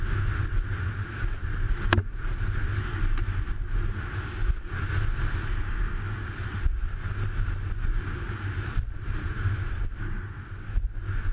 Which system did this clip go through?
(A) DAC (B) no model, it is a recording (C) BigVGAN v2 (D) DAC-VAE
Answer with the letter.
B